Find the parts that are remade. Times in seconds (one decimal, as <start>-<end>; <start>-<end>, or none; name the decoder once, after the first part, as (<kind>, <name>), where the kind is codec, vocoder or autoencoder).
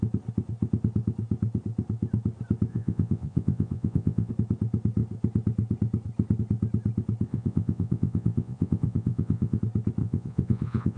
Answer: 2.7-4.3 (vocoder, Vocos); 7.3-9.6; 10.0-11.0